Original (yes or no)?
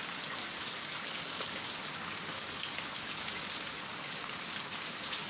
no